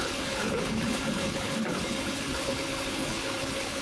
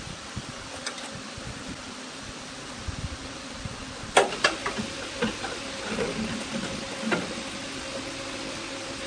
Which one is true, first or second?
second